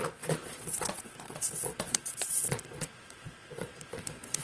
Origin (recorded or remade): remade